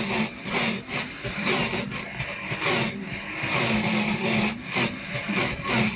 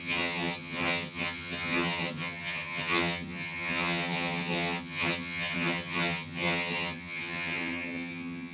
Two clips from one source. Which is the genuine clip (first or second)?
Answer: first